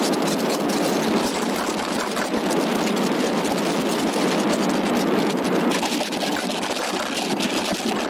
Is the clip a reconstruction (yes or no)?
no